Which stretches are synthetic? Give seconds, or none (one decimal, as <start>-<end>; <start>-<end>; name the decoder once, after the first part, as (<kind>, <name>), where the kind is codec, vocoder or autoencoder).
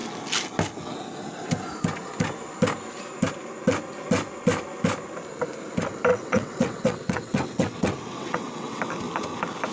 6.1-8.8 (vocoder, WaveNeXt)